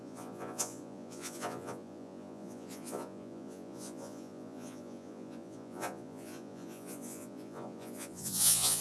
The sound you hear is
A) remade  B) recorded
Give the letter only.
A